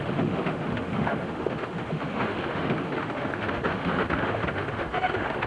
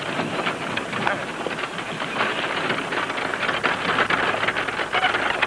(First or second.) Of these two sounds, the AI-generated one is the first